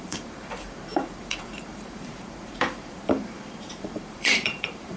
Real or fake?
fake